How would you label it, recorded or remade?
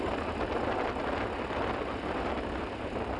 recorded